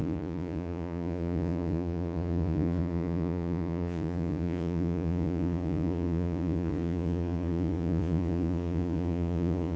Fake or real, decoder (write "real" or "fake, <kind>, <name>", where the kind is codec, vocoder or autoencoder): fake, vocoder, Vocos